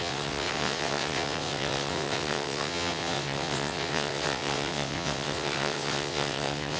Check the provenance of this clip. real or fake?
fake